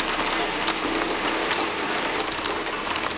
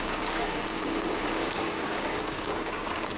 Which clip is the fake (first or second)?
second